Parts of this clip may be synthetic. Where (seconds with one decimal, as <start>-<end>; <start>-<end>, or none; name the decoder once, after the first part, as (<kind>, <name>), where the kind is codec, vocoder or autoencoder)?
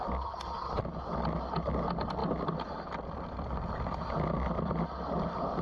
none